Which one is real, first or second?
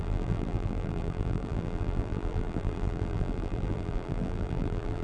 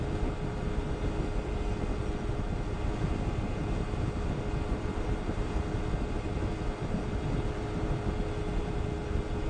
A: second